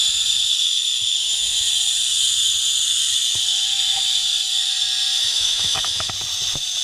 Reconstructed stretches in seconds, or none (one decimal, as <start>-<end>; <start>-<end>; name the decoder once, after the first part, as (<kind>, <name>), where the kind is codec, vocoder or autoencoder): 1.2-1.7 (autoencoder, DAC-VAE); 5.2-6.1